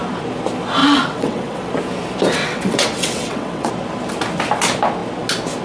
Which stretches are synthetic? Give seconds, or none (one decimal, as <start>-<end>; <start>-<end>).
0.8-1.7; 2.4-3.7